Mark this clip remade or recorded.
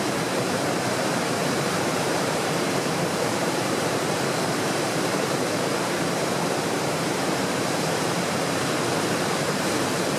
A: remade